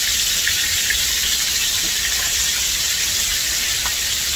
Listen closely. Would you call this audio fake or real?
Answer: fake